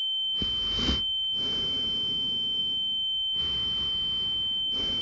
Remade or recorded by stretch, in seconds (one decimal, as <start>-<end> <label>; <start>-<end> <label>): 0.0-5.0 recorded